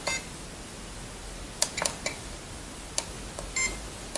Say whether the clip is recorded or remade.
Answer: recorded